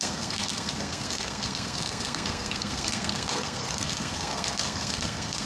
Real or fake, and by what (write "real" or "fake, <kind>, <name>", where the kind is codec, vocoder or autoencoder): fake, codec, SNAC